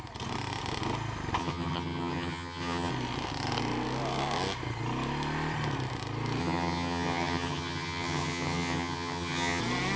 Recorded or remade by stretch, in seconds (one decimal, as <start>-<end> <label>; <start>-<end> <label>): 0.0-1.4 recorded; 1.4-2.9 remade; 2.9-6.4 recorded; 6.4-9.6 remade; 9.6-10.0 recorded